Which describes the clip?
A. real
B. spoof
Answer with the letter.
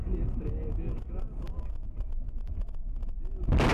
A